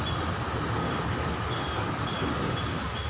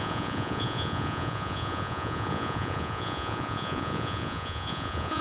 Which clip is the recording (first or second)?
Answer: first